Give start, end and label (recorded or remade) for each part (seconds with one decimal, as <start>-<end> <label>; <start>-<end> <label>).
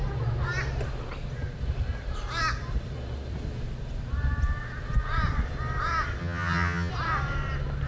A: 0.0-6.2 recorded; 6.2-6.9 remade; 6.9-7.9 recorded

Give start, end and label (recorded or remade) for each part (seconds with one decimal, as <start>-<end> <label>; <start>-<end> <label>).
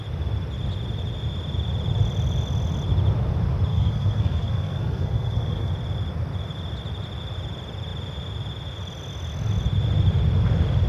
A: 0.0-3.7 recorded; 3.7-5.7 remade; 5.7-10.9 recorded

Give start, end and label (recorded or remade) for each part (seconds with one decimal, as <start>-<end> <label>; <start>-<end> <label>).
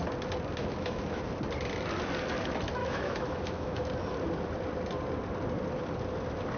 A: 0.0-0.6 recorded; 0.6-1.2 remade; 1.2-2.8 recorded; 2.8-3.9 remade; 3.9-6.6 recorded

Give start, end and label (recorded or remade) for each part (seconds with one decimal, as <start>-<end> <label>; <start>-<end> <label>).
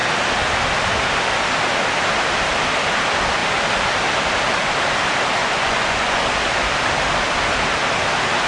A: 0.0-5.4 recorded; 5.4-6.2 remade; 6.2-8.5 recorded